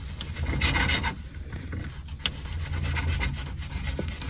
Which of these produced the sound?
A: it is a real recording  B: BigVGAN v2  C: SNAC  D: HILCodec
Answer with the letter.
A